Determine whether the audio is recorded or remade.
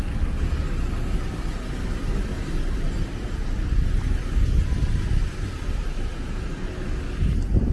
recorded